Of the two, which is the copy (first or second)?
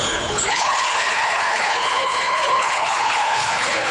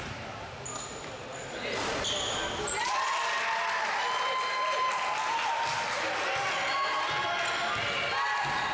first